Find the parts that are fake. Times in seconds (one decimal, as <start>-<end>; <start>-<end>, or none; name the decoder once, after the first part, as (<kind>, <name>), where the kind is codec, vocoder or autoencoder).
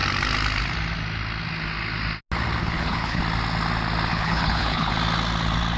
2.6-3.2 (codec, HILCodec); 4.1-4.9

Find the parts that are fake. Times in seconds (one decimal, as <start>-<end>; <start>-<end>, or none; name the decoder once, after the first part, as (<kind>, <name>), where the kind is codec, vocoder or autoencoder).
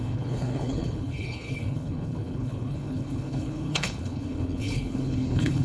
0.0-5.6 (codec, HILCodec)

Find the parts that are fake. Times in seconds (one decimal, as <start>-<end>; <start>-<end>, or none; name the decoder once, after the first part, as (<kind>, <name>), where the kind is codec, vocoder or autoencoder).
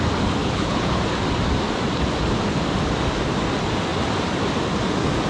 0.4-1.0 (codec, HILCodec)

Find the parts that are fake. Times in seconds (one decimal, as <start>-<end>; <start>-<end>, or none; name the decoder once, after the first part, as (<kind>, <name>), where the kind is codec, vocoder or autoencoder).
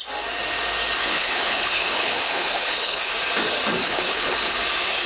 1.0-3.1 (codec, HILCodec); 3.8-4.3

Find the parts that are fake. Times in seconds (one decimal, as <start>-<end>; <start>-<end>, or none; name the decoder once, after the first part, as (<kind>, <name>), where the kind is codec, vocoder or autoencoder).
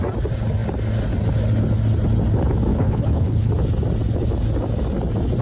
2.7-3.5 (codec, HILCodec)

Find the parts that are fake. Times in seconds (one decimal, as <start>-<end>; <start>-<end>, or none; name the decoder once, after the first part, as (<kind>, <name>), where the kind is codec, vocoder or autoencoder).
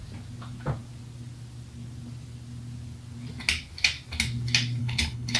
4.8-5.4 (codec, HILCodec)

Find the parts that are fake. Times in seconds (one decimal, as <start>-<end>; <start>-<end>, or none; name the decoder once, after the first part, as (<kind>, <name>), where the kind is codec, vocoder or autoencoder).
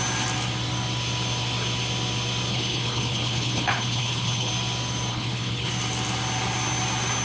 2.5-4.5 (codec, HILCodec); 5.1-5.7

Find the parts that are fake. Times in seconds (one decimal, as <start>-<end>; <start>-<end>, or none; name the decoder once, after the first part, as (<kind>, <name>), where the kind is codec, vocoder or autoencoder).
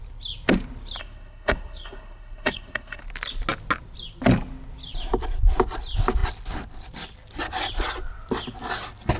1.0-3.0 (codec, HILCodec)